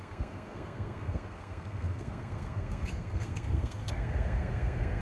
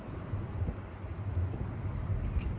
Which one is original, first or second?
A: second